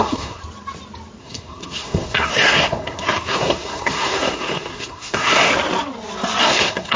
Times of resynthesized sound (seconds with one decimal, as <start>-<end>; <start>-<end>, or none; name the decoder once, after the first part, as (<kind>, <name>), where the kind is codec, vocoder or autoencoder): 0.0-0.4 (codec, SNAC); 1.2-5.5; 6.4-7.0